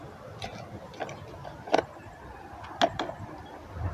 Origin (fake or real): real